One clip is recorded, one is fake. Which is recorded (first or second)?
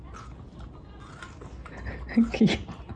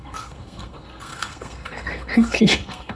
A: first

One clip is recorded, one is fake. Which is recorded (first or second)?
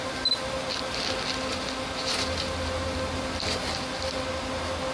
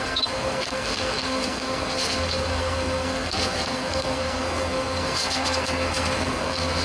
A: first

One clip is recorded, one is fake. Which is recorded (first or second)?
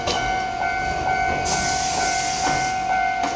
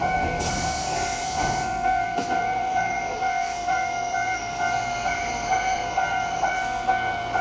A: first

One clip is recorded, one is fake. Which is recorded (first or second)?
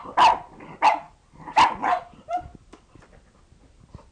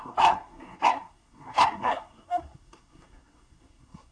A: first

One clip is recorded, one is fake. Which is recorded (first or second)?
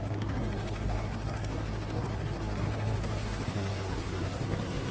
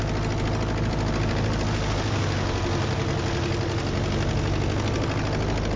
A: second